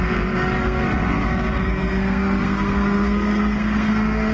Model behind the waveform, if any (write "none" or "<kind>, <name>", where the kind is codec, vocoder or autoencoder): codec, SNAC